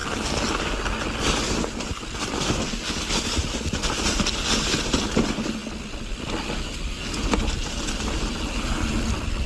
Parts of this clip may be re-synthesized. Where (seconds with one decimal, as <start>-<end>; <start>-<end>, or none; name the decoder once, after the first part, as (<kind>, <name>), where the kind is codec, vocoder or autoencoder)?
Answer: none